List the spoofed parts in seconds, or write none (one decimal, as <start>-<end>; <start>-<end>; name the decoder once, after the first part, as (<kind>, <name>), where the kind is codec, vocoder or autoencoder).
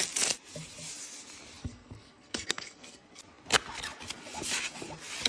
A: 1.6-3.2 (codec, SNAC)